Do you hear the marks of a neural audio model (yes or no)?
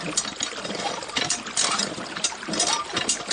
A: yes